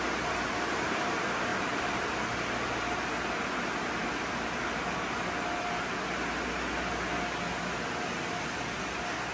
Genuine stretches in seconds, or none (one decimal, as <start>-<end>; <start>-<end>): 0.0-1.5; 2.3-9.3